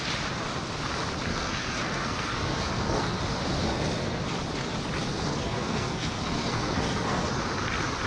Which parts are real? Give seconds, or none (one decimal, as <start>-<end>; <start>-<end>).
0.0-1.3; 3.2-3.7; 4.2-5.1; 7.4-8.1